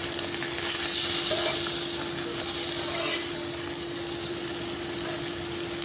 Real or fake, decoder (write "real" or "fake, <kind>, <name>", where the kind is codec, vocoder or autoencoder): real